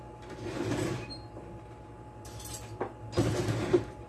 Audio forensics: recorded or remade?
recorded